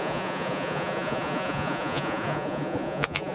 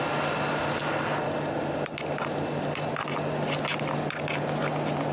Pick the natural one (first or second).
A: second